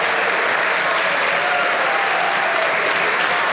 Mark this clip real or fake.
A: real